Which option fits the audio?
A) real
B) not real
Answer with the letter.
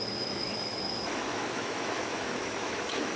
B